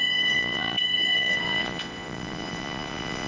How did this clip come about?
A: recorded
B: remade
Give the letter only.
B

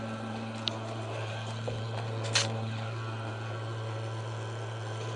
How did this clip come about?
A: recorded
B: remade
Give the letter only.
A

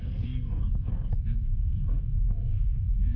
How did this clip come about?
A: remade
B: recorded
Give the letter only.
A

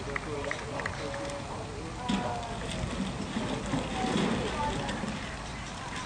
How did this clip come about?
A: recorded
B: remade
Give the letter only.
A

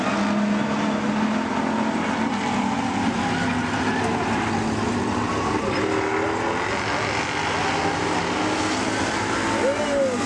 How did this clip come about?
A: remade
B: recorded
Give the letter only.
B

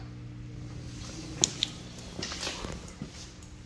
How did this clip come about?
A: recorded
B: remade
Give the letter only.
A